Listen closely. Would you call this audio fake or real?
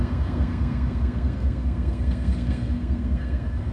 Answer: fake